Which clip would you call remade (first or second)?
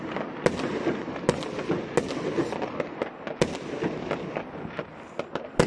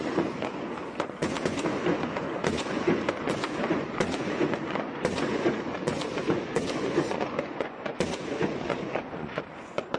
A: second